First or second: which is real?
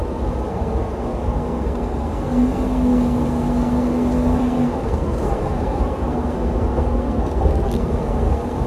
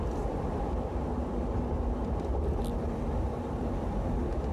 second